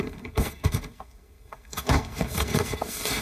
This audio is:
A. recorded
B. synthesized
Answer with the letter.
B